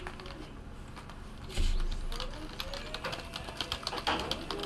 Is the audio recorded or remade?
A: recorded